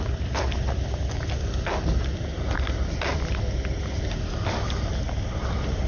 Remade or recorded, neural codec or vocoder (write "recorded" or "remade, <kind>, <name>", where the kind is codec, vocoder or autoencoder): recorded